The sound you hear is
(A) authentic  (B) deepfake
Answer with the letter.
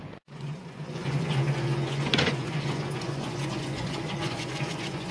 B